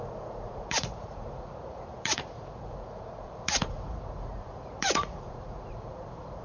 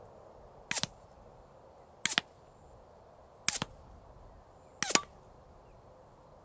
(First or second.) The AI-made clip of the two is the first